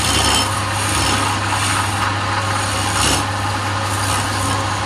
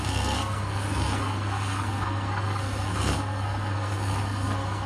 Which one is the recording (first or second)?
first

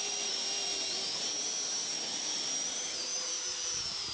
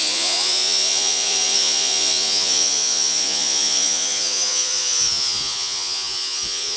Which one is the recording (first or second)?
first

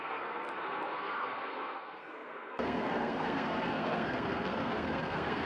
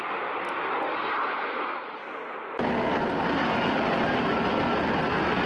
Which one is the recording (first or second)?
second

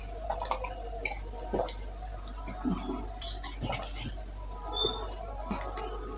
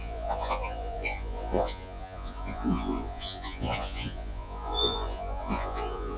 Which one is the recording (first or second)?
first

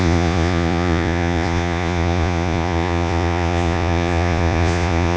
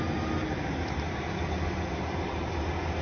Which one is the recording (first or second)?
second